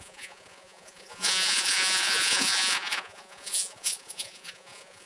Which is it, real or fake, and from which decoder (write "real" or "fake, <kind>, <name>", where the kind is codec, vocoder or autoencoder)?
fake, vocoder, Vocos